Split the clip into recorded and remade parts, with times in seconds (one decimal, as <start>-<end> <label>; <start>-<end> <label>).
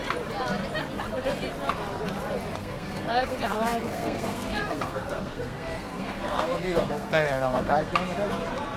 0.0-2.6 recorded; 2.6-7.9 remade; 7.9-8.8 recorded